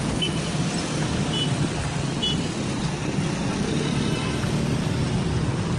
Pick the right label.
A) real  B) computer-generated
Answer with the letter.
A